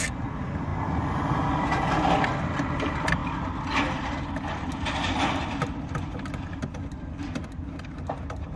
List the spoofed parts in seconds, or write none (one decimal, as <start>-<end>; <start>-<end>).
none